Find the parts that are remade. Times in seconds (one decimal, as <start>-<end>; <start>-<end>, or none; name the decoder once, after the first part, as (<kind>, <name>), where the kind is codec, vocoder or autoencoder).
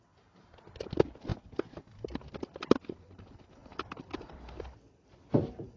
3.6-5.3 (vocoder, BigVGAN v2)